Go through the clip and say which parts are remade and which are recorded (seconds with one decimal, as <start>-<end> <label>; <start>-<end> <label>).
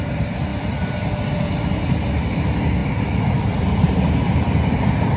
0.0-5.2 recorded